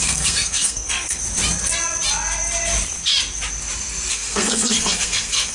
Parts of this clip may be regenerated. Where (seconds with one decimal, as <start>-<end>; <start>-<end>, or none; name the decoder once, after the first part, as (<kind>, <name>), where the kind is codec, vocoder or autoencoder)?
0.0-1.2 (codec, SNAC); 4.1-5.5